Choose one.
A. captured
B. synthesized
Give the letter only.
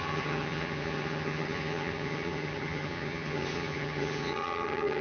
B